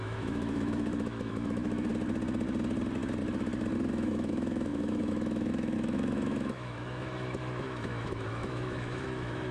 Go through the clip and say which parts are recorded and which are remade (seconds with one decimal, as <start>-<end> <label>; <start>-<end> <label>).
0.0-1.9 remade; 1.9-3.9 recorded; 3.9-9.5 remade